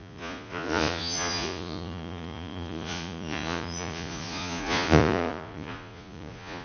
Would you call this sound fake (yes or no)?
yes